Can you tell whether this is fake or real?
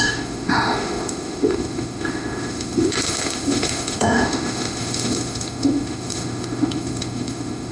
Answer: fake